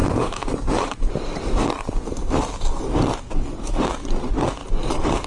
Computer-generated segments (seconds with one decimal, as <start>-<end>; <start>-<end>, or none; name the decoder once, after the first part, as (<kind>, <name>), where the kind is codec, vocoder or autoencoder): 0.0-2.4 (vocoder, BigVGAN v2); 4.6-5.3